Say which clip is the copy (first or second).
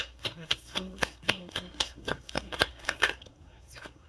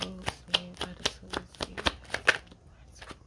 first